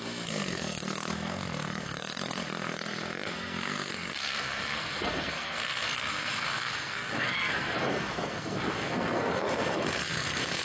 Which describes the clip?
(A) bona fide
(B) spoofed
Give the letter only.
B